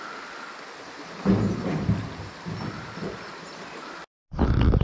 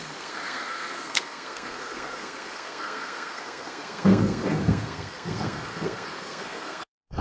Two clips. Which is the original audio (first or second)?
first